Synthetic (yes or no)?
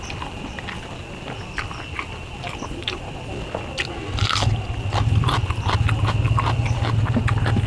no